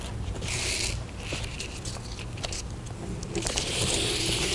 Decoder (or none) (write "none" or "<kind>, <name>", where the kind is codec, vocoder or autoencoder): vocoder, BigVGAN v2